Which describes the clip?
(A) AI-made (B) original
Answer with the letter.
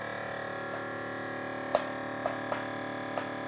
B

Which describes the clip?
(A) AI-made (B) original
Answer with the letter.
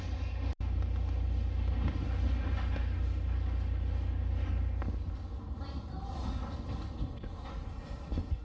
B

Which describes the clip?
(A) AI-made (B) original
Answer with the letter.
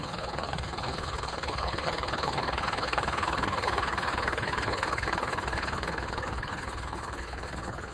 A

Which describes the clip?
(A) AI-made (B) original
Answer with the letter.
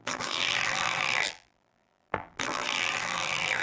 A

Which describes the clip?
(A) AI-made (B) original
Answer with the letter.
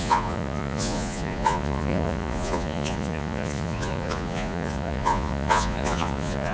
A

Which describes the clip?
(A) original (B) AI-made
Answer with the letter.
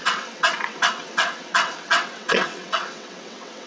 B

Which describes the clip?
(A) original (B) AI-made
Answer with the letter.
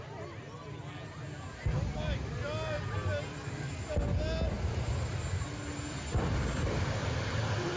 A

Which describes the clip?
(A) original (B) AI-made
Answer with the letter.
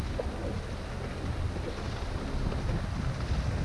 A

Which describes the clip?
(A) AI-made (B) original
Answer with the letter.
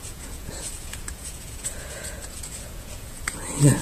A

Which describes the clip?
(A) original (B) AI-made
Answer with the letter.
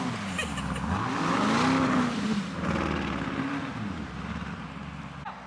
A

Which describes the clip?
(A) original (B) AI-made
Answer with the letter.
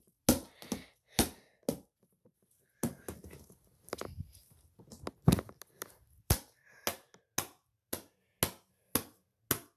A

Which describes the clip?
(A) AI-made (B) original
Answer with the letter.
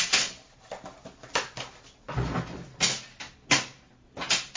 B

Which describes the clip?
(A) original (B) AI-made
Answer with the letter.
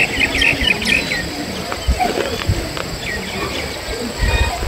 A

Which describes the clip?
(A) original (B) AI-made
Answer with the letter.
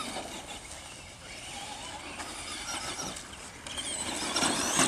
A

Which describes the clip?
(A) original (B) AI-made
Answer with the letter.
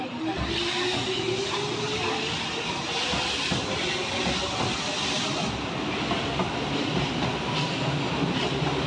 A